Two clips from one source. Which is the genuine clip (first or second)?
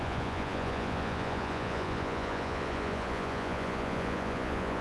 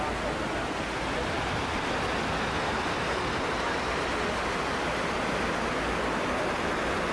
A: second